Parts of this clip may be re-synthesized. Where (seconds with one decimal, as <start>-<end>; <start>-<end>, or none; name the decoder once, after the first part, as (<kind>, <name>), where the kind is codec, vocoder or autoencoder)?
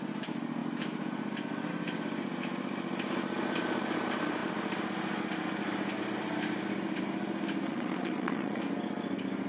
7.7-8.6 (vocoder, Vocos)